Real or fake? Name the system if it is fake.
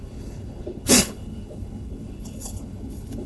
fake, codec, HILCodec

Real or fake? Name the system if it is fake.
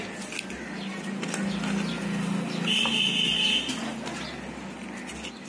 real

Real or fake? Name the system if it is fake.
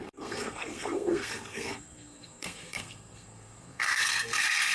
fake, codec, SNAC